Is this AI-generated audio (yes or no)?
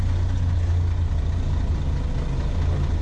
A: no